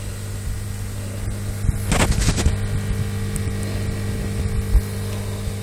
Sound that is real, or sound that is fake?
real